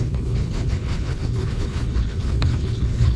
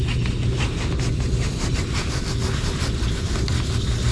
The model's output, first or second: first